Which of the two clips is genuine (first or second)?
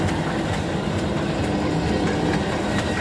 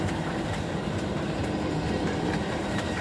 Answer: first